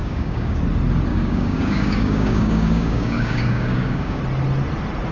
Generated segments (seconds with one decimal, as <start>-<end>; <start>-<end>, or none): 0.0-0.6; 1.1-4.2